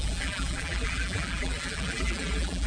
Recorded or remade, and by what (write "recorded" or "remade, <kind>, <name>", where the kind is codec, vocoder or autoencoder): remade, vocoder, BigVGAN v2